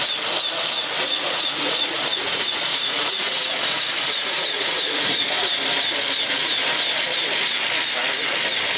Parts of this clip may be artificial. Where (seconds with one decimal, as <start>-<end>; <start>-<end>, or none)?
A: 1.0-5.5